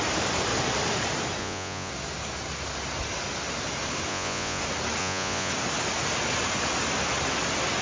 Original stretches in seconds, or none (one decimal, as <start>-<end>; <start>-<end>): 0.0-1.4; 1.9-4.1; 4.6-5.0; 5.5-7.8